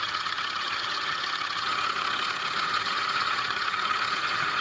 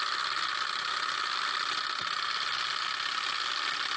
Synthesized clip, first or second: first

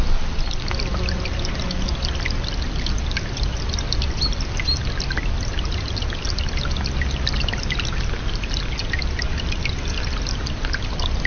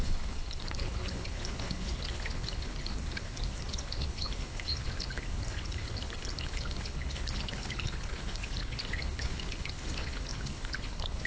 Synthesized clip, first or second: second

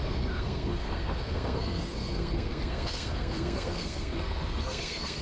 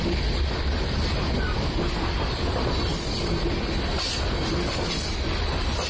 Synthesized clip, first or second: first